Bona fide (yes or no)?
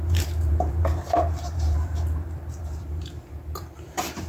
no